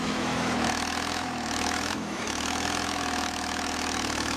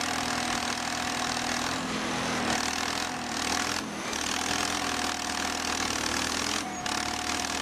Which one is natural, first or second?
second